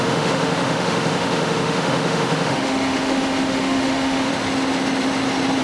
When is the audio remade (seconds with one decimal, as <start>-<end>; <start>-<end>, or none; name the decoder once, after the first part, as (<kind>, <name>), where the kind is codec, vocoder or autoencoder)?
0.0-4.3 (autoencoder, DAC-VAE)